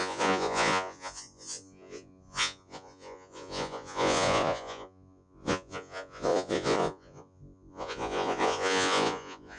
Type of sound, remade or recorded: remade